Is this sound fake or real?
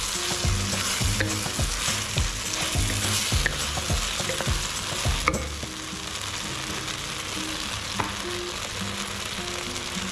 real